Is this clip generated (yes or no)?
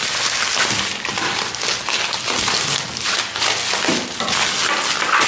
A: no